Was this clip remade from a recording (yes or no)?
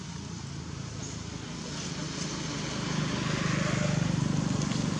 no